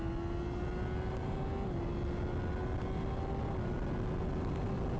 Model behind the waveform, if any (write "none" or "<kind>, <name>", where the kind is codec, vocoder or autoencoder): none